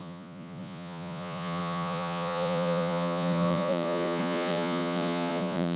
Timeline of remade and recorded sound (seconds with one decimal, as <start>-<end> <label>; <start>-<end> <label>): 0.0-5.8 remade